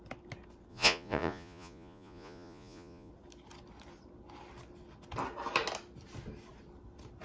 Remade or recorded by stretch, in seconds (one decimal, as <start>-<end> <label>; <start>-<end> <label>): 0.0-0.7 recorded; 0.7-3.1 remade; 3.1-7.2 recorded